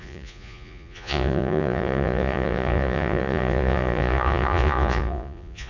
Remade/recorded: remade